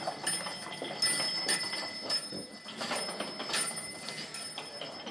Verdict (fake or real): real